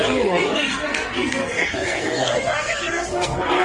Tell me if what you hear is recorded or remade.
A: remade